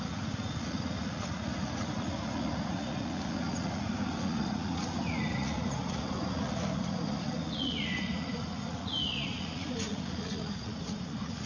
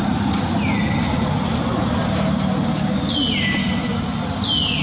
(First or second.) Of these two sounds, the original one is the second